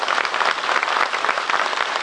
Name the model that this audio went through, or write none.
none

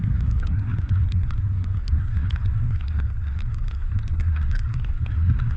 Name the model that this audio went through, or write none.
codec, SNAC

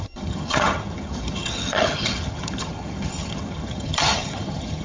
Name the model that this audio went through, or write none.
vocoder, HiFi-GAN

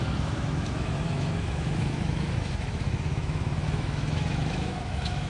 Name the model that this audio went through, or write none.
autoencoder, DAC-VAE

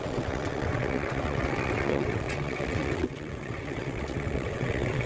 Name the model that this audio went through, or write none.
vocoder, WaveNeXt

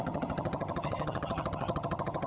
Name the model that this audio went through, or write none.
vocoder, HiFi-GAN